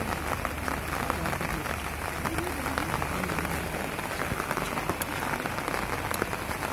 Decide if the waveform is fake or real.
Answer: real